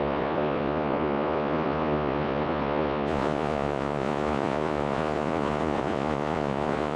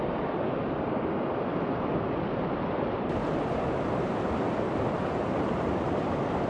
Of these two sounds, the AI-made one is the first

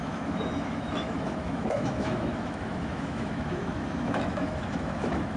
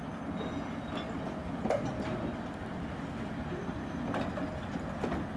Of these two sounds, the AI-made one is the first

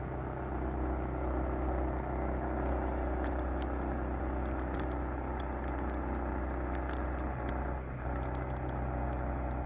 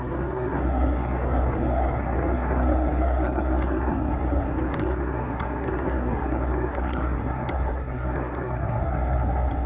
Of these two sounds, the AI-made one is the second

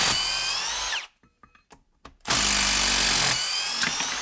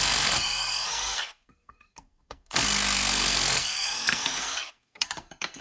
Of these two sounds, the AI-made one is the second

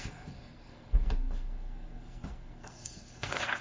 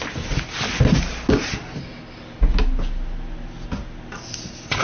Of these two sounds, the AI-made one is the first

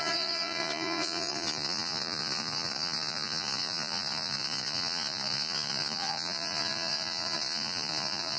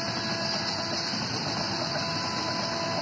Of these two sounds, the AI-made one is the first